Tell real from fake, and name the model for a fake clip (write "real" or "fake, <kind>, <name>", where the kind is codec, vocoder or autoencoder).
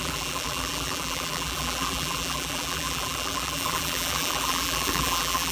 fake, vocoder, BigVGAN v2